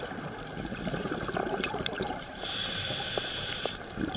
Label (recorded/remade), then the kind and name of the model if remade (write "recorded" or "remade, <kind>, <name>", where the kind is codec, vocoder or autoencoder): recorded